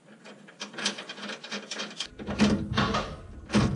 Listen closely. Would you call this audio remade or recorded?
recorded